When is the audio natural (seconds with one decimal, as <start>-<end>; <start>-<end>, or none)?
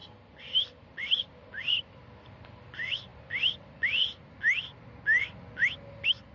0.0-6.3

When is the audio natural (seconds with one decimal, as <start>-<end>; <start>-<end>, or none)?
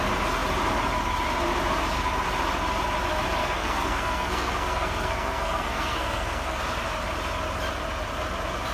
0.0-3.4; 6.6-8.7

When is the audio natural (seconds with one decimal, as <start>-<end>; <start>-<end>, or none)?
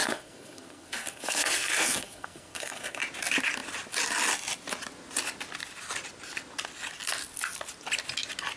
3.0-8.6